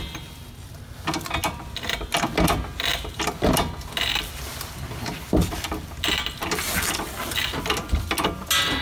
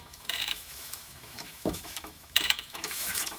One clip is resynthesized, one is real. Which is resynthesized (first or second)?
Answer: second